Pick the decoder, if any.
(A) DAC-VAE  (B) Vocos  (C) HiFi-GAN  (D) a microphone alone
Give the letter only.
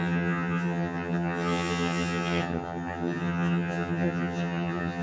C